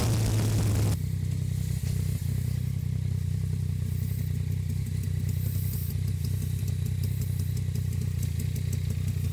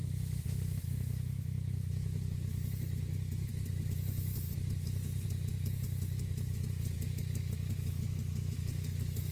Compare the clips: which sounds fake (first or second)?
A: second